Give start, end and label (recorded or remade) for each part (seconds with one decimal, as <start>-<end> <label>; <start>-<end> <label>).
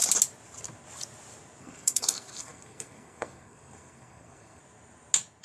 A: 0.0-1.6 recorded; 1.6-4.6 remade; 4.6-5.4 recorded